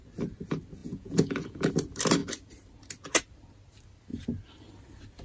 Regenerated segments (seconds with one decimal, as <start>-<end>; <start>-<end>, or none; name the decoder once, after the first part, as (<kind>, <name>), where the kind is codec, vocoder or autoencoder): 0.8-1.7 (vocoder, Vocos)